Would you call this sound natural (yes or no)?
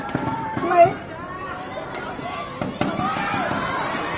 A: no